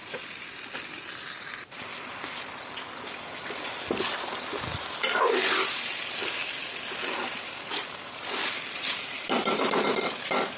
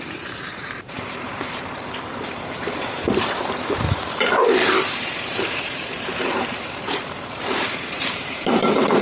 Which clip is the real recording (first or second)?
first